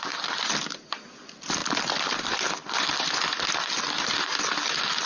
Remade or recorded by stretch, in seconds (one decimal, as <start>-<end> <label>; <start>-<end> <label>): 0.0-5.1 recorded